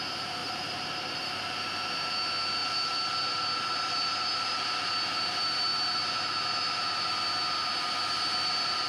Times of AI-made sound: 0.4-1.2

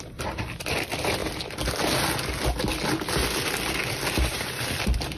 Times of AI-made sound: 0.0-1.2; 4.3-5.2

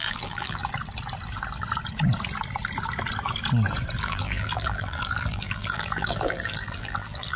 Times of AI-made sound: 0.0-0.6; 4.0-7.4

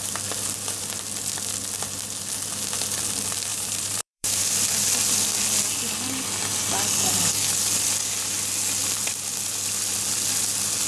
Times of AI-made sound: 3.5-4.4

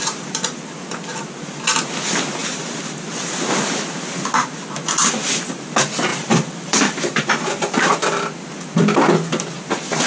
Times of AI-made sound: 2.4-3.2; 6.1-7.3

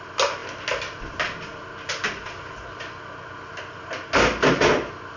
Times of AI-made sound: none

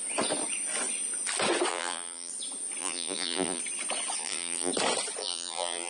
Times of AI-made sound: 1.7-2.3; 2.8-3.6; 4.2-4.7; 5.2-5.9

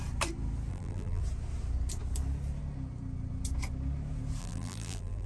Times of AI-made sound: 0.7-1.2; 4.4-5.3